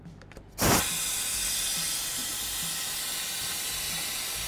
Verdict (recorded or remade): recorded